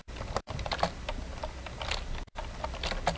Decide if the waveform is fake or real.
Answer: real